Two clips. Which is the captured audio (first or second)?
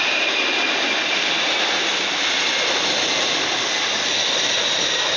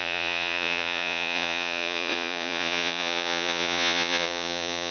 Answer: first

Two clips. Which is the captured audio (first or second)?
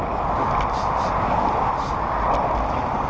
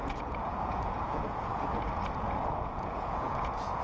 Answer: first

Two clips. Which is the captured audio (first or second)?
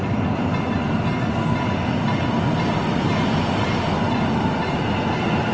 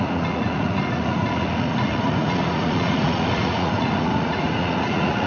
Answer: first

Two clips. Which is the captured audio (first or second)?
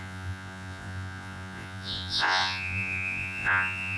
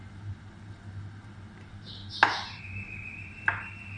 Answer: second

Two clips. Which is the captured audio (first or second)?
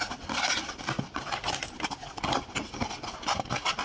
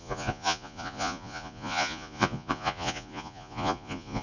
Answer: first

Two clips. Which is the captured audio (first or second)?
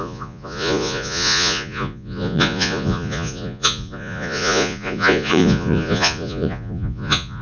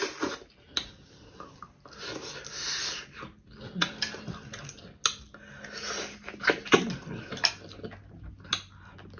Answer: second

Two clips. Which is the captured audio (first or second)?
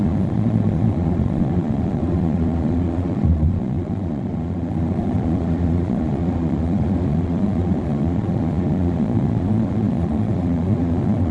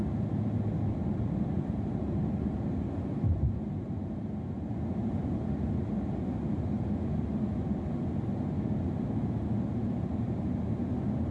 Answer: second